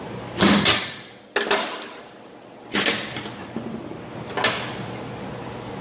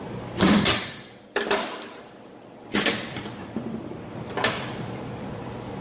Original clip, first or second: first